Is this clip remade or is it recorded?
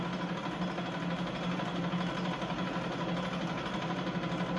recorded